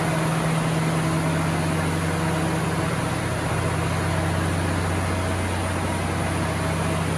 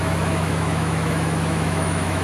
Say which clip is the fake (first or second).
second